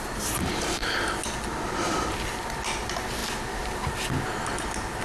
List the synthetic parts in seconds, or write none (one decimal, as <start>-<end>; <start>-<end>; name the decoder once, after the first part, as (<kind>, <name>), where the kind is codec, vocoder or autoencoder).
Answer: none